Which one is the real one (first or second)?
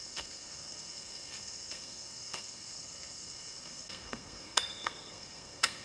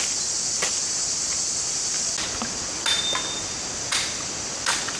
second